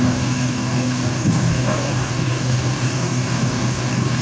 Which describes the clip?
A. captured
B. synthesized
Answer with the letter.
B